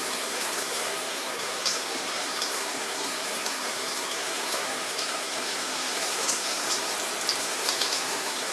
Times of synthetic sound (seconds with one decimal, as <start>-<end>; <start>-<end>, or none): 0.0-6.9; 7.4-8.5